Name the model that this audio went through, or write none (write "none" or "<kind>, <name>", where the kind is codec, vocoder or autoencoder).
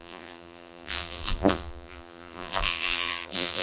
vocoder, BigVGAN v2